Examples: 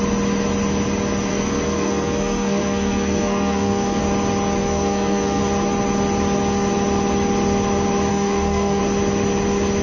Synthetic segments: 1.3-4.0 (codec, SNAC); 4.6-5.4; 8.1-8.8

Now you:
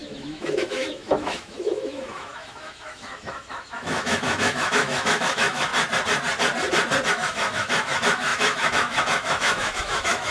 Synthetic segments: 0.0-5.7 (autoencoder, DAC-VAE); 7.1-10.3

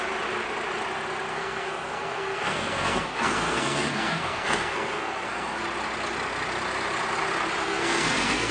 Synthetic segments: 1.3-5.6 (codec, SNAC); 7.6-8.5

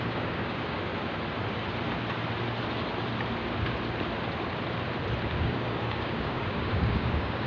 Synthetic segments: 0.0-0.9 (codec, DAC); 5.4-7.5